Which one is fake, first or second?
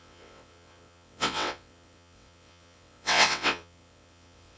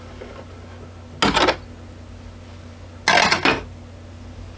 first